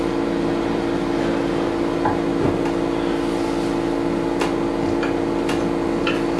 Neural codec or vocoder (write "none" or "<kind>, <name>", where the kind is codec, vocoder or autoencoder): none